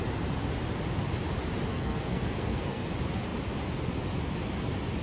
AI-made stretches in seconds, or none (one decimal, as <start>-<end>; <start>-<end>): 1.7-2.9